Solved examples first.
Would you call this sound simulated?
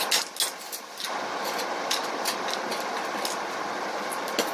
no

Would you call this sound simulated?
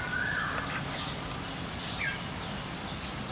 no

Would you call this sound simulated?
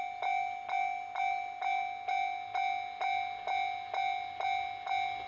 no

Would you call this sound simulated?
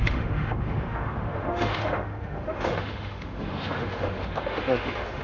yes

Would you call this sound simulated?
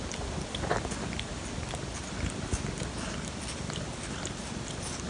no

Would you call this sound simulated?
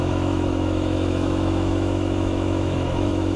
yes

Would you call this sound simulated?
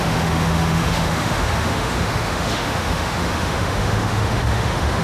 yes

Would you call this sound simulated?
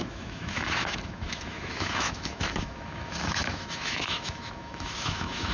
yes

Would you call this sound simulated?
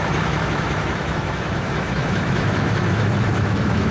yes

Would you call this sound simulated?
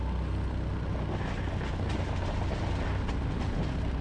no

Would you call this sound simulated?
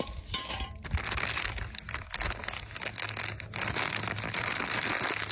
no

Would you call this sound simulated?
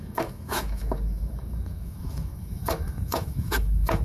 yes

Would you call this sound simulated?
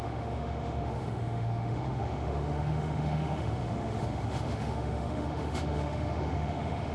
yes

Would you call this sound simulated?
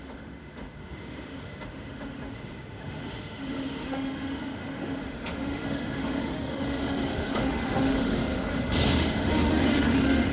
yes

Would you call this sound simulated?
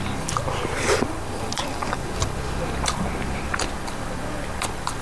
no